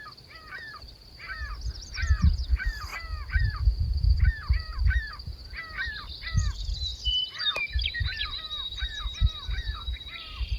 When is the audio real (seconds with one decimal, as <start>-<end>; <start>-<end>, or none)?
5.4-5.9